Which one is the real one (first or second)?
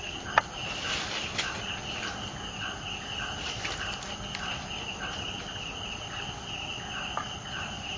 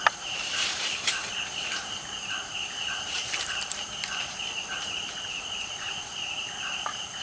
first